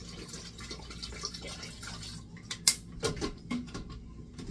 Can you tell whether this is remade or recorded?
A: recorded